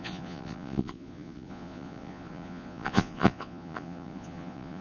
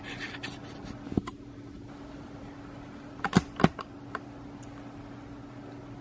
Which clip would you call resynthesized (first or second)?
first